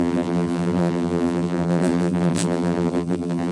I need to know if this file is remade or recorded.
remade